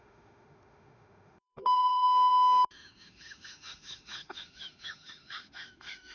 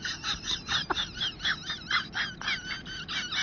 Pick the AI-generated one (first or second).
first